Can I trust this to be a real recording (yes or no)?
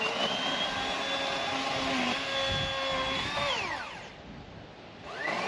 yes